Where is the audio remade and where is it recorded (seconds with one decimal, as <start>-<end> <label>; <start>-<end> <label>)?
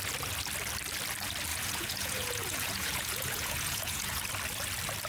0.0-1.5 recorded; 1.5-4.2 remade; 4.2-5.1 recorded